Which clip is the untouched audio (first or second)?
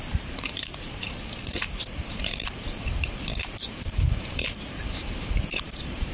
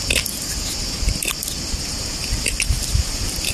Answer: second